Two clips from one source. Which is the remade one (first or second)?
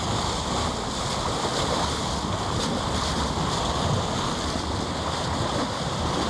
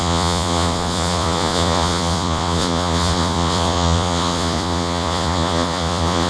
second